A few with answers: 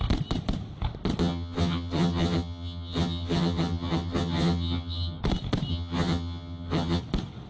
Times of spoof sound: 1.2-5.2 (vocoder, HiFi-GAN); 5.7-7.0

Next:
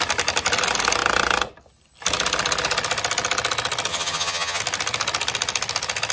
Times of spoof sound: 3.9-4.6 (vocoder, HiFi-GAN)

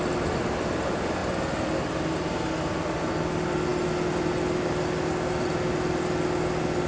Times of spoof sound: none

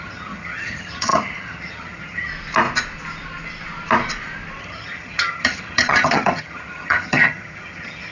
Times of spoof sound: 0.0-2.3 (vocoder, HiFi-GAN); 4.6-8.1